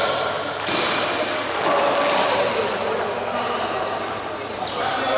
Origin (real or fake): real